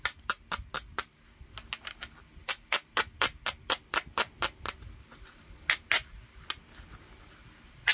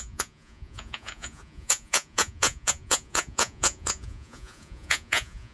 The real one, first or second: first